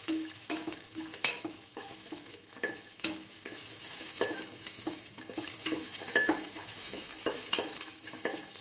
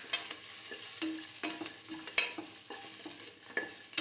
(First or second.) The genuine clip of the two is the second